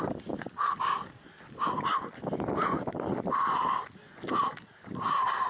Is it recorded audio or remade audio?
recorded